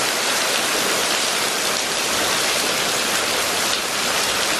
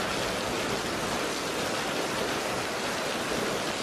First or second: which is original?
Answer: second